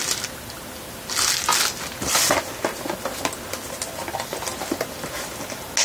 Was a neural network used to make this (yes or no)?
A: no